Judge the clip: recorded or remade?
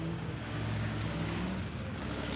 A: remade